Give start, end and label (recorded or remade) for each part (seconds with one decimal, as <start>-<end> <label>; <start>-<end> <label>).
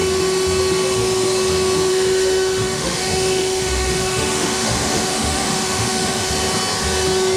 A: 0.0-1.9 recorded; 1.9-6.3 remade; 6.3-7.4 recorded